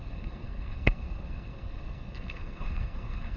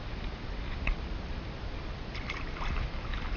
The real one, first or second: second